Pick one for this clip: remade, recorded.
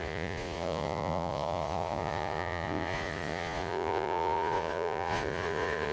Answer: remade